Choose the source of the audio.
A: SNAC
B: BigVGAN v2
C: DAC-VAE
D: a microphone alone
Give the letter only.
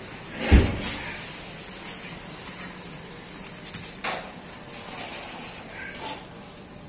D